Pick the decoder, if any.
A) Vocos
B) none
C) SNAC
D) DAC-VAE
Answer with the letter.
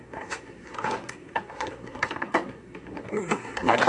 C